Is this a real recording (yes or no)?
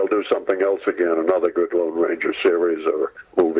yes